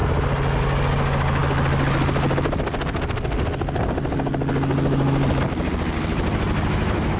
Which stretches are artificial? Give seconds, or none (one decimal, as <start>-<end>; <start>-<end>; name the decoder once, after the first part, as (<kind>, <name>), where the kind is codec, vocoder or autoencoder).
none